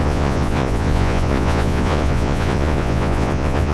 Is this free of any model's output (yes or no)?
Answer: no